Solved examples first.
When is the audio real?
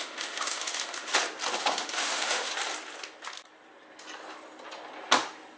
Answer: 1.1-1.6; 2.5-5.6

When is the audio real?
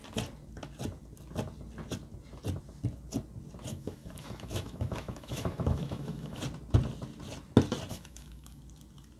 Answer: 0.0-3.7; 6.4-7.9; 8.6-9.2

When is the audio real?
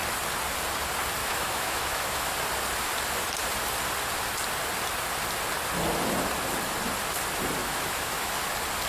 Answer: 0.0-1.2; 2.3-7.6; 8.3-8.9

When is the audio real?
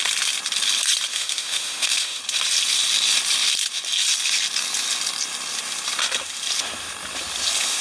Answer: 0.0-1.1; 2.2-7.8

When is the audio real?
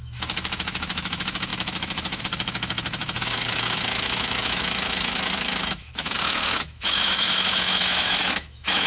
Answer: none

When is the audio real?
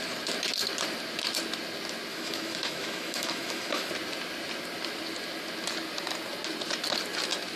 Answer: 0.0-2.1; 3.9-7.6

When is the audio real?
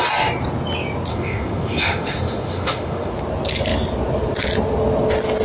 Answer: 0.0-1.1; 3.1-5.4